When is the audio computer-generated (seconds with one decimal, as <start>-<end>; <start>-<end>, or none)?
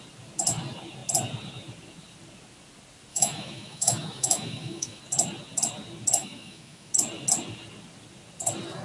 3.1-5.0; 6.2-6.9